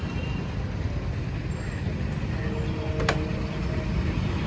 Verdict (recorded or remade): recorded